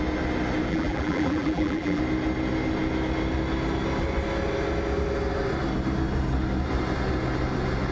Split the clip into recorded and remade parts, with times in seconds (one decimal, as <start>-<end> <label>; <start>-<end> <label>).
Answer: 0.0-0.7 recorded; 0.7-2.0 remade; 2.0-7.9 recorded